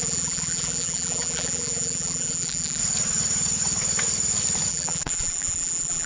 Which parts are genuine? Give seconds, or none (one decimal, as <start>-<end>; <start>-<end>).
2.8-4.7